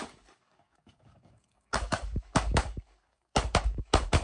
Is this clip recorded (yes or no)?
no